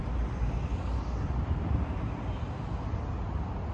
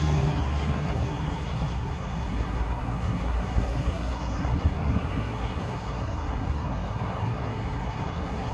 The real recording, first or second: first